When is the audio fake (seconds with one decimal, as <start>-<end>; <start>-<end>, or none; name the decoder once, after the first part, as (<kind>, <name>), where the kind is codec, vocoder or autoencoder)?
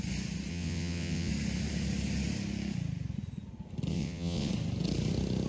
0.5-1.3 (vocoder, WaveNeXt); 3.9-4.5